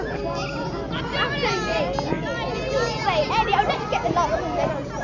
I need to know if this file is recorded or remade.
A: recorded